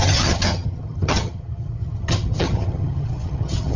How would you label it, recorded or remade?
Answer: remade